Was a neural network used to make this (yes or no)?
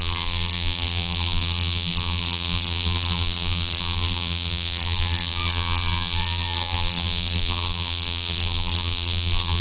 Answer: yes